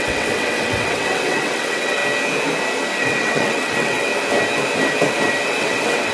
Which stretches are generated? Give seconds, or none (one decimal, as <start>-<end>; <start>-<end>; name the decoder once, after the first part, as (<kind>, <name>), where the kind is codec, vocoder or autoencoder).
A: 0.0-2.0 (vocoder, WaveNeXt); 3.0-4.1; 5.6-6.1